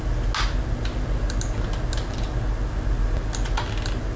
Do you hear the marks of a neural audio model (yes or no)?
no